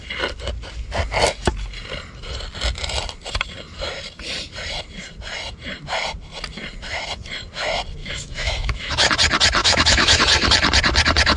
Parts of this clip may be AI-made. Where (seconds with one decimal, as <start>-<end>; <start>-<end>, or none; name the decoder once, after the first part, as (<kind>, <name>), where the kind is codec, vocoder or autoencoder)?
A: 8.0-9.1 (autoencoder, DAC-VAE); 9.6-10.2